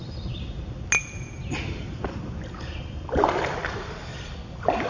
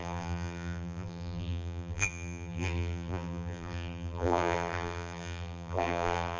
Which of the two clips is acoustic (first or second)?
first